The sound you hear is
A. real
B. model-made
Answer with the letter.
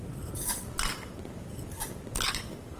A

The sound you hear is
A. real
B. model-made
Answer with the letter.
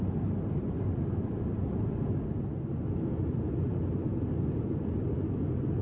A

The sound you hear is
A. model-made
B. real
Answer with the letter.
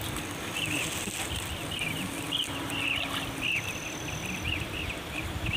B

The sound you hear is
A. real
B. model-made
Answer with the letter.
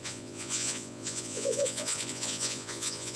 B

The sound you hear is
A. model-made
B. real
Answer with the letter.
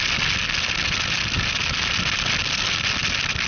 B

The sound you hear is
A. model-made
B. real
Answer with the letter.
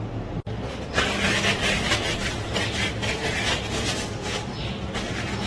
B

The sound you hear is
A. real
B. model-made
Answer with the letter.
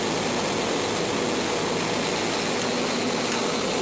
A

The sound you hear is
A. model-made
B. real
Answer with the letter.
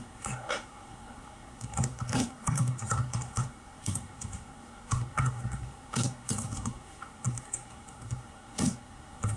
A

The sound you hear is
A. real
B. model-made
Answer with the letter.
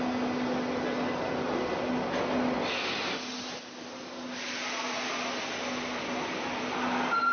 A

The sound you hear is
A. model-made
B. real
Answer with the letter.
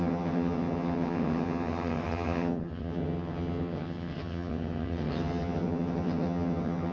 A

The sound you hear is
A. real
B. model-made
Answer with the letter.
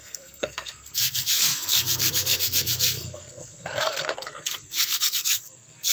B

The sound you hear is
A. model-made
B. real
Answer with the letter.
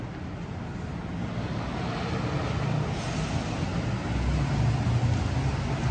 B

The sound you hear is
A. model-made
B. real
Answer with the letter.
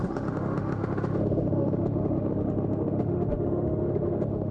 A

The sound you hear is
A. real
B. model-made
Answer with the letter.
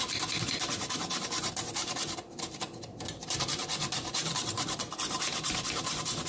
B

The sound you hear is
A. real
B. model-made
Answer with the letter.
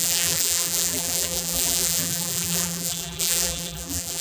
B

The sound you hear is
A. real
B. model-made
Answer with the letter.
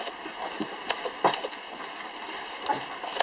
A